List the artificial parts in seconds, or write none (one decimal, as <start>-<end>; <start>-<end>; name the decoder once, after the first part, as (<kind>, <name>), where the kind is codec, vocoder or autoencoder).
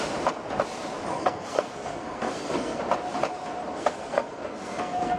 1.1-2.8 (codec, SNAC); 3.7-5.2